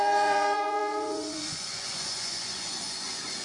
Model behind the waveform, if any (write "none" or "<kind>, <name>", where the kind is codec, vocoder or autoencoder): vocoder, Vocos